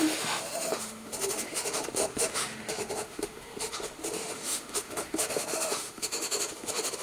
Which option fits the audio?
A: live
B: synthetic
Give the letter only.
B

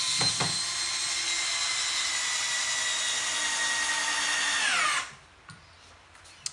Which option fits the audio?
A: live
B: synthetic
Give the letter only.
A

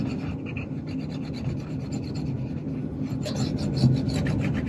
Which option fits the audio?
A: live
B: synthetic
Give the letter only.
A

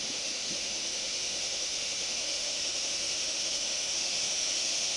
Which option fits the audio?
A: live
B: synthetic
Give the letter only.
B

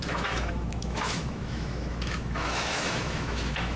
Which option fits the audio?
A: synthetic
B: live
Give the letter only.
A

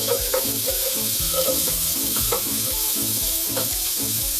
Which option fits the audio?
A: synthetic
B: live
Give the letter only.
A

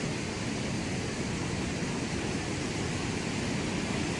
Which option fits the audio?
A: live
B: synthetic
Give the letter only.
A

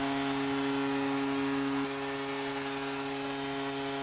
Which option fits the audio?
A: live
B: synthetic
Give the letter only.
A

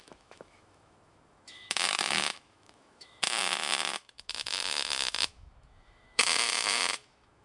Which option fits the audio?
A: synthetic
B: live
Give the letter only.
A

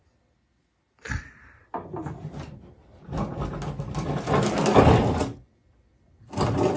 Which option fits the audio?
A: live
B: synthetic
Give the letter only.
A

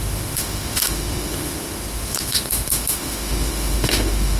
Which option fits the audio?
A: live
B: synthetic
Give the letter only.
B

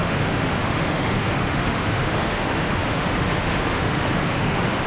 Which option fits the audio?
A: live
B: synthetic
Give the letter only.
B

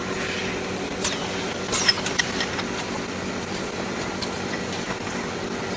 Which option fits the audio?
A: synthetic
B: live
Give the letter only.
B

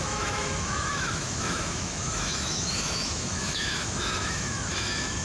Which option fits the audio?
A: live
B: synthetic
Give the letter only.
B